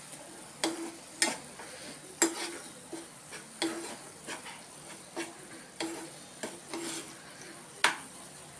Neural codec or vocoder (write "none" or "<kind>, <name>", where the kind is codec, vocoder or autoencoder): none